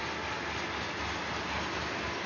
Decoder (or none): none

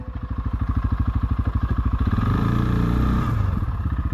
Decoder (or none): vocoder, BigVGAN v2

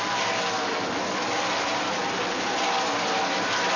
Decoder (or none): none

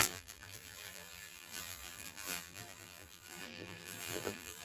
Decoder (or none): vocoder, BigVGAN v2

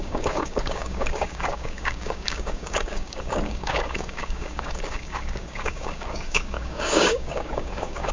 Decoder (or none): codec, DAC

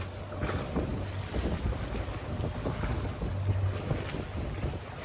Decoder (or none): none